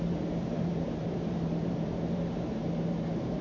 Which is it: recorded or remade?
remade